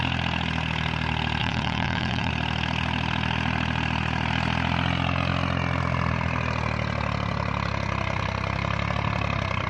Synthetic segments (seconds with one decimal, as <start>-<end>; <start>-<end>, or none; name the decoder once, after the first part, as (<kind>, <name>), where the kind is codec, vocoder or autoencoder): 1.4-2.3 (vocoder, WaveNeXt)